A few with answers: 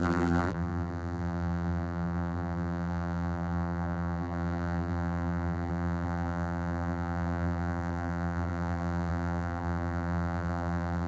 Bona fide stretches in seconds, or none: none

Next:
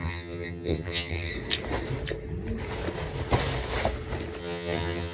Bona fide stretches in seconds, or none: 1.3-4.4

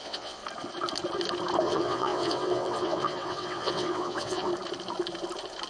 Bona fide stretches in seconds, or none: 0.4-1.6; 4.5-5.7

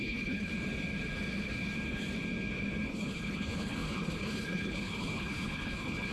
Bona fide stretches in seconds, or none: 0.5-2.9

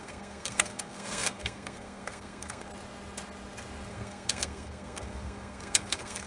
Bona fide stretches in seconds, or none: 2.7-3.9

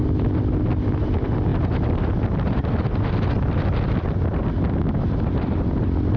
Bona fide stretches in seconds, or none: 0.0-6.2

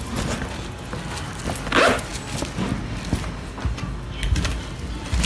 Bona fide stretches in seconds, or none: 0.0-5.3

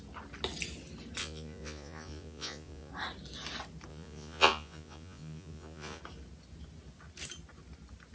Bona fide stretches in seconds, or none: 0.0-1.2; 2.9-3.9; 6.0-8.1